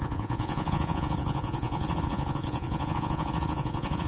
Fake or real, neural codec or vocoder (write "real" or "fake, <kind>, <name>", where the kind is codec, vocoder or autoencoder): fake, vocoder, Vocos